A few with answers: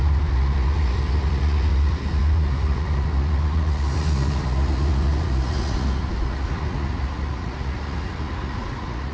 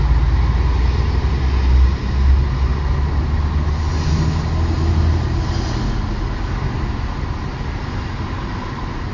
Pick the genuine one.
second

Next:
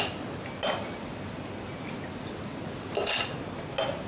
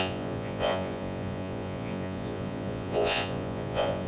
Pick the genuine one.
first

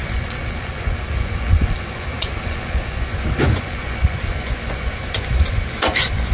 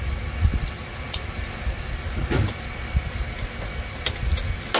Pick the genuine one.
second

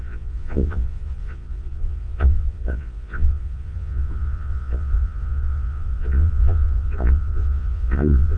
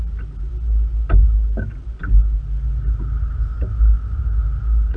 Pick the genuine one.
second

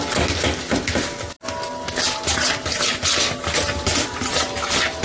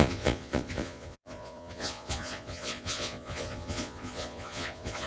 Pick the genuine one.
first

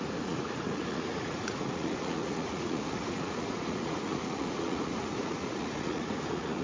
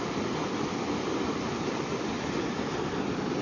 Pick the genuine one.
second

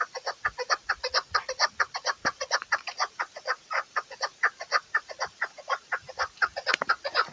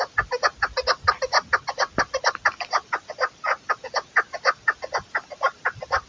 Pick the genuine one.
second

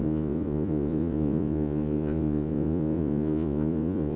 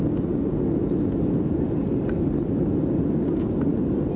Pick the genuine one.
second